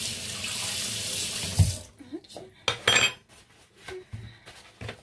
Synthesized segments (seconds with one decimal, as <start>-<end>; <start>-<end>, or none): none